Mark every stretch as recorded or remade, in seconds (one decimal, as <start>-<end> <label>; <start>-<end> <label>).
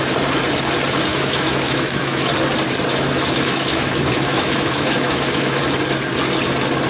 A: 0.0-1.1 recorded; 1.1-2.3 remade; 2.3-2.9 recorded; 2.9-5.6 remade; 5.6-6.9 recorded